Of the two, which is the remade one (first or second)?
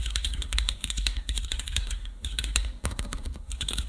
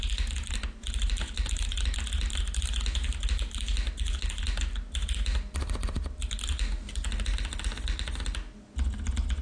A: first